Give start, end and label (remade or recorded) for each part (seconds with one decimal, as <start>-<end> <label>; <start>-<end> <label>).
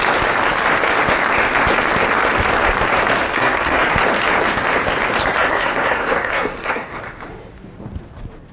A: 0.0-3.3 recorded; 3.3-3.9 remade; 3.9-5.4 recorded; 5.4-7.0 remade; 7.0-8.5 recorded